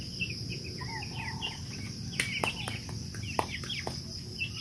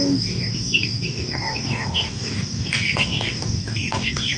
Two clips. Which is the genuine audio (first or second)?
first